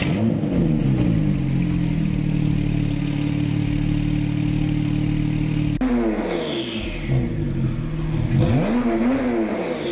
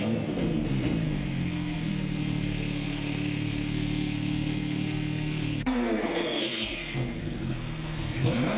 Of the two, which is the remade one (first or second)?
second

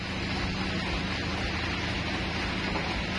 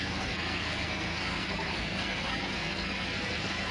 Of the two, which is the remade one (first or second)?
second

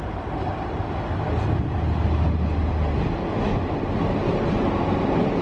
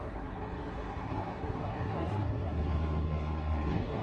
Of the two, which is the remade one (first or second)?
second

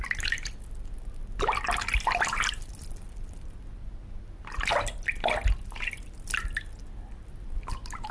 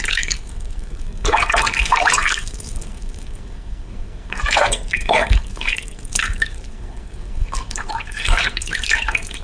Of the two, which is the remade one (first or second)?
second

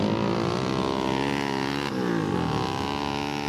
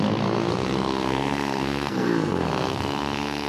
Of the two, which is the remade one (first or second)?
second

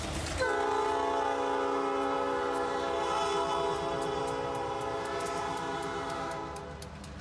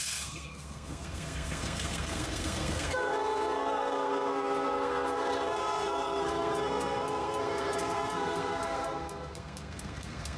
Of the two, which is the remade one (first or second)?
second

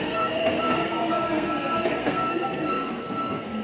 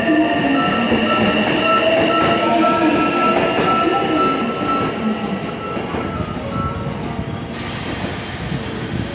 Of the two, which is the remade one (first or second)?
first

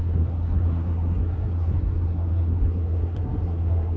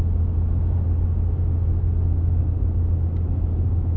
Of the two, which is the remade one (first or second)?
first